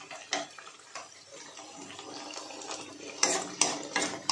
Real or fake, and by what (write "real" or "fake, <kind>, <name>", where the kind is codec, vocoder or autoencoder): real